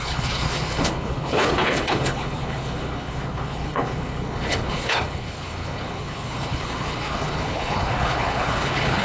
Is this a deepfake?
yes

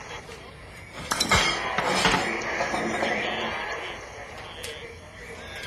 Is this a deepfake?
no